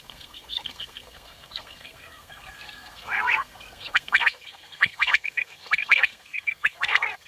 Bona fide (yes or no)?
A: no